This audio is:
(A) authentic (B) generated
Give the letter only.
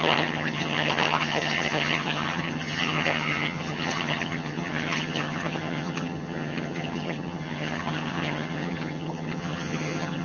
B